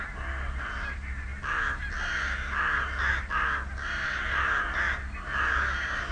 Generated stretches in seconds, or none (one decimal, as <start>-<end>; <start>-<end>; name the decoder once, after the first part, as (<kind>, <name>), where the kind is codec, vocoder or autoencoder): none